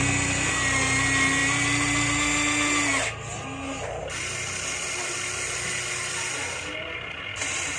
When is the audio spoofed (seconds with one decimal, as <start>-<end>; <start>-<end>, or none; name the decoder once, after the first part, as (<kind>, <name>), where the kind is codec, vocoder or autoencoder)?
none